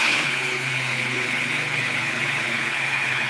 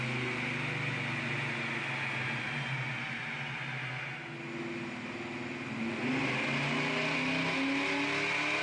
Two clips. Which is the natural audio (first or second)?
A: second